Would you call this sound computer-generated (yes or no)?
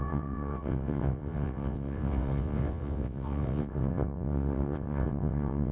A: yes